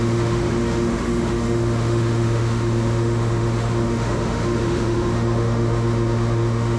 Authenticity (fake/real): fake